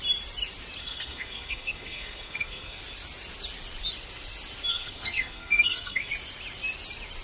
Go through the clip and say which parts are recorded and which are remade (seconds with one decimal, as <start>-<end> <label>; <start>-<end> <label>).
0.0-0.8 recorded; 0.8-2.8 remade; 2.8-4.7 recorded; 4.7-6.1 remade; 6.1-7.2 recorded